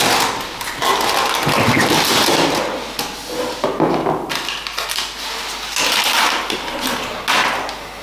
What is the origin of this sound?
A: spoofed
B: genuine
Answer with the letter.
B